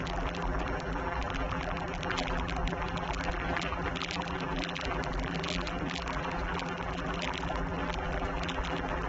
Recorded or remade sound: remade